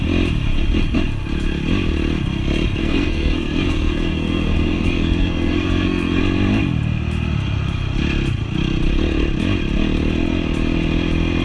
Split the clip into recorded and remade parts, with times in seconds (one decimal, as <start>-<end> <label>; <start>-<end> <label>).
0.0-2.8 recorded; 2.8-6.2 remade; 6.2-11.4 recorded